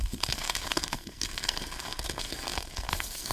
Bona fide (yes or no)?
no